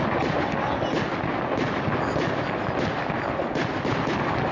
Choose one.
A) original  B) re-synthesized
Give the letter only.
A